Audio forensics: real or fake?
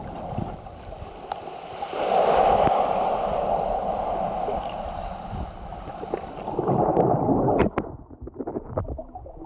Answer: real